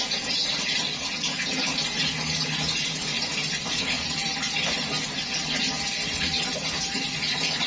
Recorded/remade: recorded